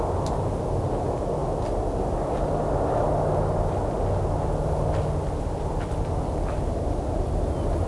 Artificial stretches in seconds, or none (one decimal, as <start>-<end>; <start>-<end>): none